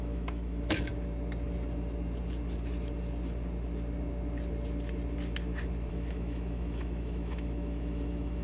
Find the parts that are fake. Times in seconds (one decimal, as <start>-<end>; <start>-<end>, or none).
0.0-0.9; 5.9-8.4

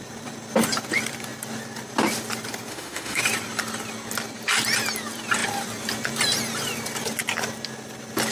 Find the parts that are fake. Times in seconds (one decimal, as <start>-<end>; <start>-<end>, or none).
2.7-3.2

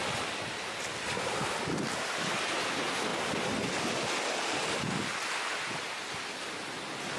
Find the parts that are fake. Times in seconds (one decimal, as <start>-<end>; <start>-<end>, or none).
none

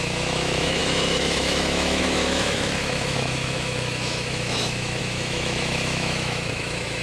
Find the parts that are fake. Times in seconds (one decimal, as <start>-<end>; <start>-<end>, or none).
0.0-7.0

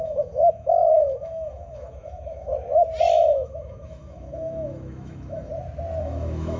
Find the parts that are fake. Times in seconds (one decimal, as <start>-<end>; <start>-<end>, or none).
0.0-2.5; 3.0-5.5; 6.0-6.6

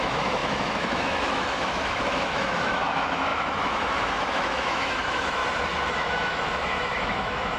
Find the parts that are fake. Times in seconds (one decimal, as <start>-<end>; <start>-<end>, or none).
0.0-5.4; 5.9-7.6

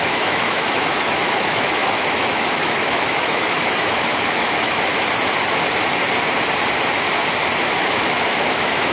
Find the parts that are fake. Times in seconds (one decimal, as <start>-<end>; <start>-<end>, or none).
0.0-4.9; 7.8-8.9